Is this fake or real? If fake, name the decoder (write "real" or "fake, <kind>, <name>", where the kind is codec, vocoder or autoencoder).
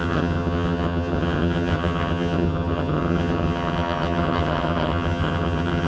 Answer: fake, vocoder, HiFi-GAN